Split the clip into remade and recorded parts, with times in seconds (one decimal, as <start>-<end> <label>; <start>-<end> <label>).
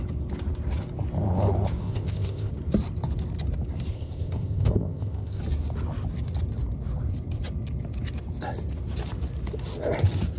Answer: 0.0-1.8 recorded; 1.8-2.5 remade; 2.5-3.9 recorded; 3.9-5.4 remade; 5.4-10.4 recorded